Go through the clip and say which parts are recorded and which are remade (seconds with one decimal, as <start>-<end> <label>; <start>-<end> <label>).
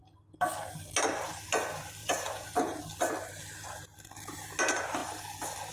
0.0-2.0 recorded; 2.0-2.8 remade; 2.8-5.7 recorded